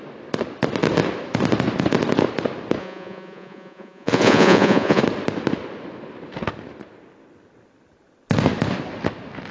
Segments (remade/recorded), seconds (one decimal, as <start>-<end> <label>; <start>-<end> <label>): 0.0-2.8 recorded; 2.8-5.0 remade; 5.0-9.5 recorded